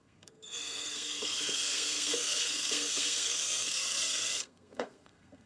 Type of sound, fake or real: fake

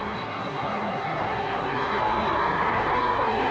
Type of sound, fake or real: fake